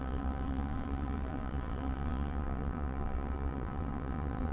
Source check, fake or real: fake